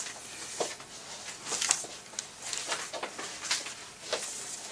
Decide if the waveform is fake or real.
real